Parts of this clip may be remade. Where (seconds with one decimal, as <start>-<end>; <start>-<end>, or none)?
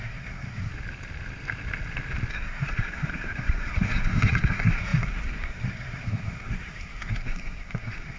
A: 0.0-0.7; 2.3-8.2